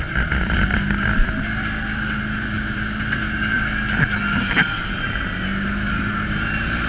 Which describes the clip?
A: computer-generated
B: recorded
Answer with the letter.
B